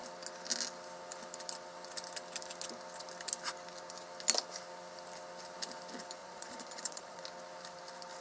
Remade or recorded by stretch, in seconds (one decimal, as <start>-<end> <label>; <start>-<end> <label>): 0.0-6.2 recorded; 6.2-7.2 remade; 7.2-8.2 recorded